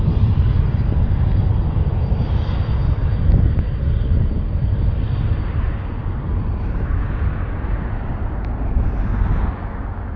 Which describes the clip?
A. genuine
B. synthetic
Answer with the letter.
A